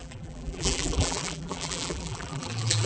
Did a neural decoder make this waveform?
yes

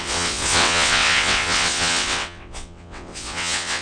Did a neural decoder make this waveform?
yes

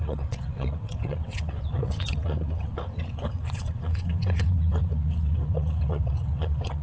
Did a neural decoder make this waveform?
yes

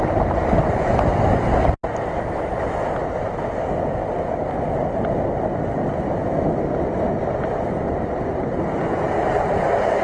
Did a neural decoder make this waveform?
no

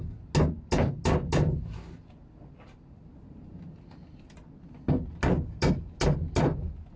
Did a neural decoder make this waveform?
no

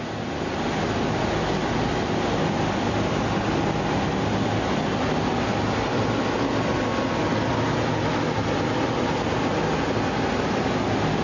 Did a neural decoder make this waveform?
no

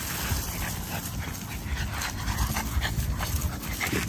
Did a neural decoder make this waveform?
no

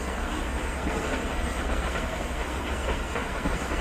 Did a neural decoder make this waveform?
yes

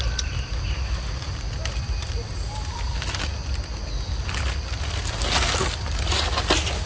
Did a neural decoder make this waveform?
no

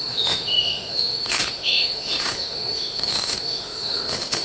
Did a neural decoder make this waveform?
yes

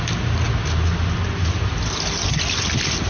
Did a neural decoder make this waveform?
no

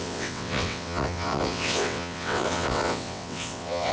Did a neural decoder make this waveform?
yes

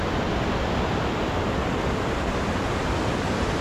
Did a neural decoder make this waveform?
no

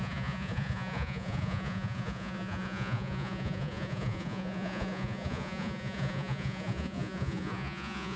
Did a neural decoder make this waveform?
yes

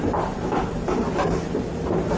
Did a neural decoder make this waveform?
no